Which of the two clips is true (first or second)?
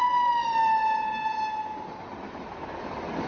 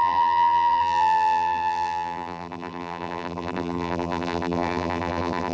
first